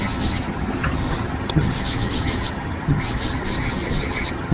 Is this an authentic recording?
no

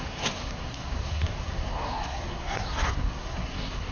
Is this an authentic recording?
no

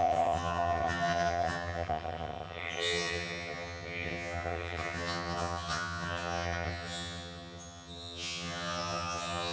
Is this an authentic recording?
no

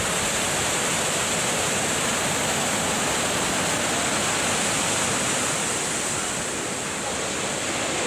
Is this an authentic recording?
yes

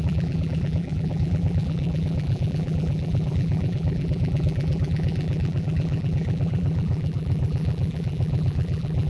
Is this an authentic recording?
no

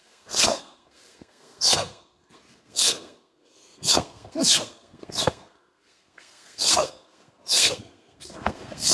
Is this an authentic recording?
no